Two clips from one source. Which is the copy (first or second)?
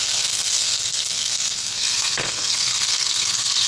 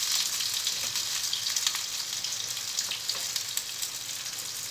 first